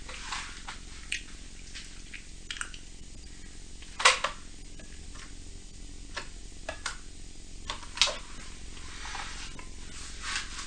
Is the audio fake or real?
real